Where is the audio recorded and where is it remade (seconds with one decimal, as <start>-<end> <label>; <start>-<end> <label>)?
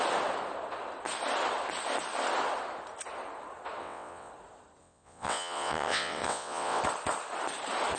0.0-3.8 recorded; 3.8-4.3 remade; 4.3-4.8 recorded; 4.8-6.8 remade; 6.8-8.0 recorded